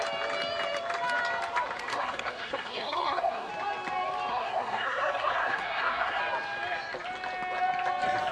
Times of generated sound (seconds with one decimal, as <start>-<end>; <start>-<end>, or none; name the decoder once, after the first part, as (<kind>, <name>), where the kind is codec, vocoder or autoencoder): 1.9-3.5 (codec, SNAC); 4.3-6.2